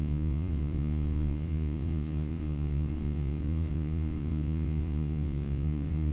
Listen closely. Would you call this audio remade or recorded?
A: remade